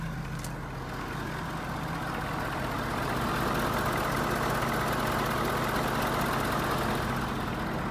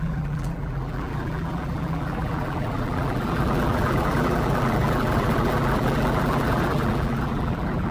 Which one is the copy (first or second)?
second